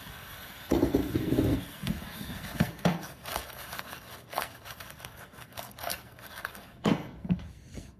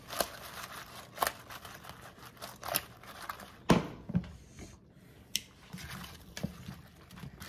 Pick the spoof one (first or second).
first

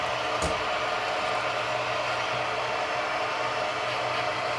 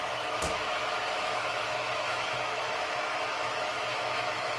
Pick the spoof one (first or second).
second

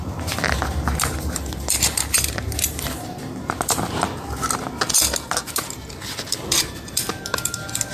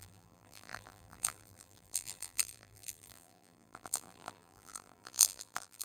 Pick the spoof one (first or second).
second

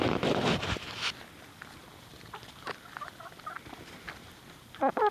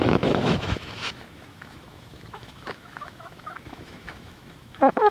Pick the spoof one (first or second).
second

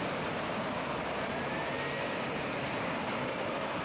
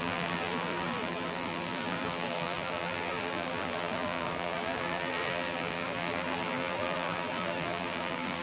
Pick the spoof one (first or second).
second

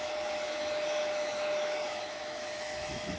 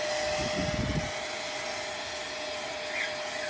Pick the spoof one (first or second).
first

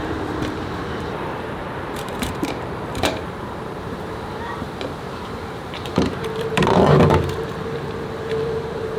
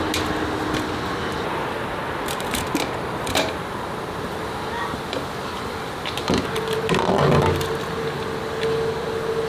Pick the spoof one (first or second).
first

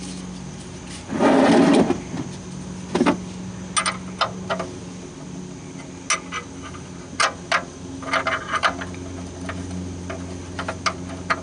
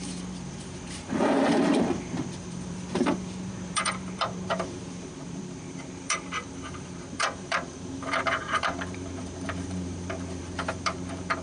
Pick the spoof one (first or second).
second